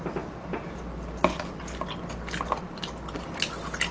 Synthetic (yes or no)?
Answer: no